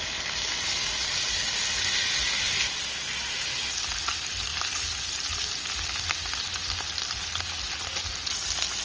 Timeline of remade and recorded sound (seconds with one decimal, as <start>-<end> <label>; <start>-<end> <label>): 0.0-8.8 recorded